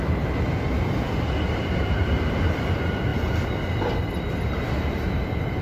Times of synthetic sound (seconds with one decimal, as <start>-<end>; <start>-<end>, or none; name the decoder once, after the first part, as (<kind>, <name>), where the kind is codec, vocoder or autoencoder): 0.0-3.1 (vocoder, BigVGAN v2)